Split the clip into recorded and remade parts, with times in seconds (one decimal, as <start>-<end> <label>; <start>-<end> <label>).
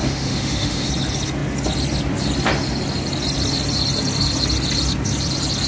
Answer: 0.0-0.9 remade; 0.9-5.7 recorded